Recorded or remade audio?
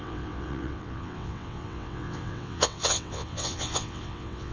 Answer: remade